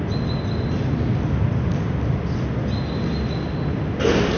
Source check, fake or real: real